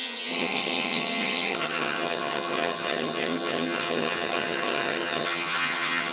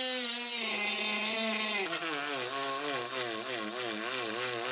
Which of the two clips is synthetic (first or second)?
first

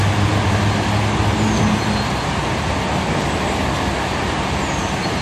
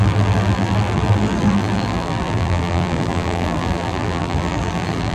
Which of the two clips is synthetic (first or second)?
second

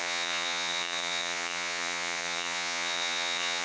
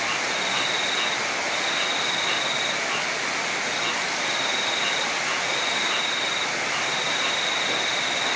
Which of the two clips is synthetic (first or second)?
first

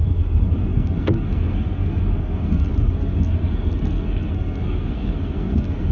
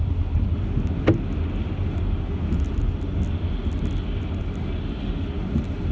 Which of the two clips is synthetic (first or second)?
first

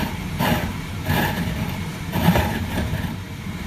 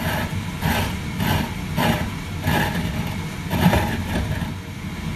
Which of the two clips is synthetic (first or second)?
first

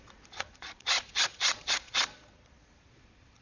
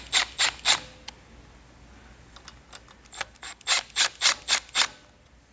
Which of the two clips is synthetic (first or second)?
first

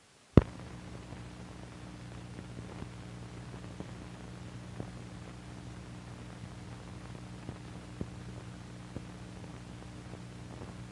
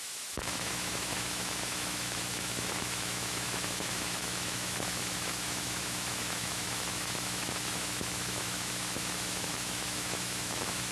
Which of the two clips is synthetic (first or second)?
second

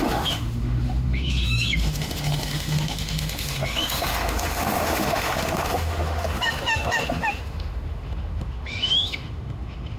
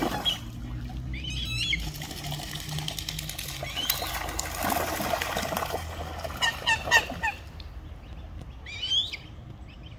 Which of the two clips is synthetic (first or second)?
first